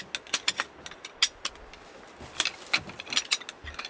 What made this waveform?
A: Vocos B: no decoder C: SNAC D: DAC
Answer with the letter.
B